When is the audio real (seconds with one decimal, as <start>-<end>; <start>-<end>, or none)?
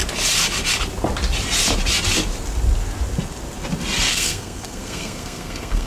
0.0-4.1